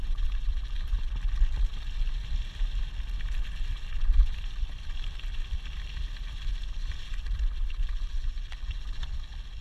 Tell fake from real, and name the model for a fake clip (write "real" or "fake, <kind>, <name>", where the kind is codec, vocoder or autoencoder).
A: real